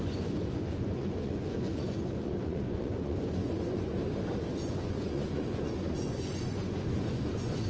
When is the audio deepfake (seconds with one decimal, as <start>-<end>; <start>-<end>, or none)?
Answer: 0.0-4.0; 4.5-7.7